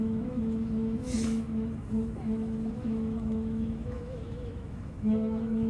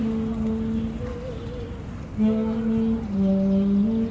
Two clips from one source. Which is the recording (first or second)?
second